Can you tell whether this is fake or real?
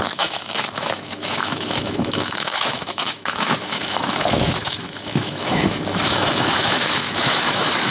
fake